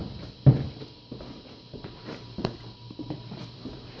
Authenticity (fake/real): real